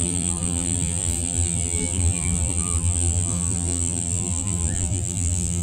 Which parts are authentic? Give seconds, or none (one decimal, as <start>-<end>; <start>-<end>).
none